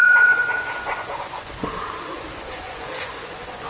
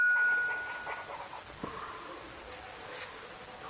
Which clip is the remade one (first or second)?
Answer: first